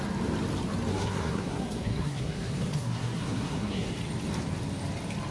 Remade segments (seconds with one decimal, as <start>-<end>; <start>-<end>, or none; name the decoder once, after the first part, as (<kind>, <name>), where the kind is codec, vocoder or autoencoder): 0.9-3.9 (codec, SNAC)